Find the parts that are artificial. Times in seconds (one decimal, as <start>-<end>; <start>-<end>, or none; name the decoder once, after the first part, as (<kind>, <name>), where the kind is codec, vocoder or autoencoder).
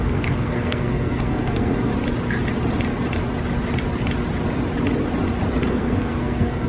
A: 0.0-1.9 (codec, SNAC); 5.7-6.7